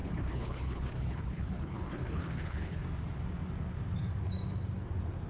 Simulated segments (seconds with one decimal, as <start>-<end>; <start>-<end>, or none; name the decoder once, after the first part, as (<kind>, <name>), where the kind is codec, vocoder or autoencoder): 0.0-2.8 (codec, HILCodec)